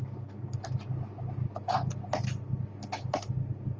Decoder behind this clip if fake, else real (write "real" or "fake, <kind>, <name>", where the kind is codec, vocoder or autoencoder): real